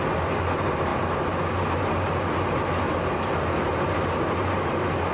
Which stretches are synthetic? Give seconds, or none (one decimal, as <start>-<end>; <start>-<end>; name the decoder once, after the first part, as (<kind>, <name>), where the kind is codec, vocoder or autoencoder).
none

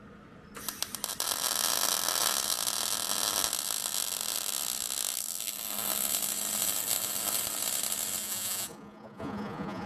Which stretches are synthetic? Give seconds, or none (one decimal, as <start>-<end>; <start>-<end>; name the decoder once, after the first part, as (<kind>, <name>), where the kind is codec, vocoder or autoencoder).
8.2-9.9 (vocoder, Vocos)